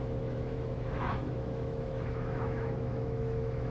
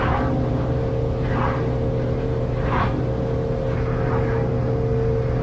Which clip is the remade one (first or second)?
first